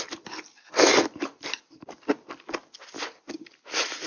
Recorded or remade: recorded